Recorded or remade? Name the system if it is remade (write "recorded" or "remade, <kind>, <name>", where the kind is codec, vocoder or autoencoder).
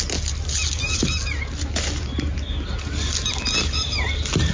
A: recorded